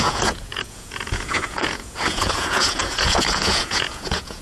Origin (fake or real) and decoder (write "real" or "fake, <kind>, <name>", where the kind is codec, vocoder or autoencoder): fake, vocoder, Vocos